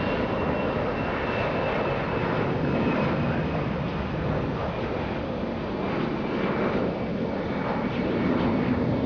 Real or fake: real